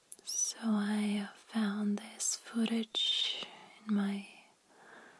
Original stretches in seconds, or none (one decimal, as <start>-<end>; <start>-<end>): 1.4-2.2; 3.6-4.7